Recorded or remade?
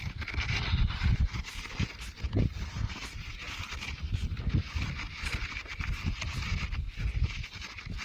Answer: recorded